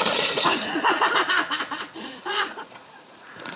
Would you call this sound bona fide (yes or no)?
no